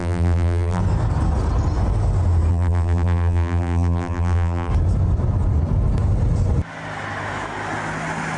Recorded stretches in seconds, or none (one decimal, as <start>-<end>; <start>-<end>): 0.8-2.5; 4.7-8.4